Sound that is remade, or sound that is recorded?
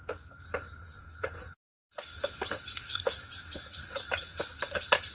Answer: remade